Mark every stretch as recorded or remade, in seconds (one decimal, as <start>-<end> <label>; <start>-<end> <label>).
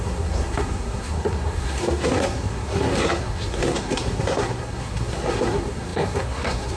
0.0-6.8 remade